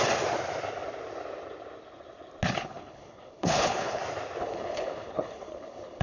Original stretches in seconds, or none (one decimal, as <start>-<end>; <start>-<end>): 0.0-2.6; 4.0-4.4

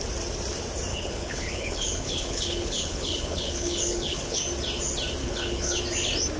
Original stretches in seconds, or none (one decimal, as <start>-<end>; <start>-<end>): 0.0-0.9; 4.4-5.2; 5.8-6.4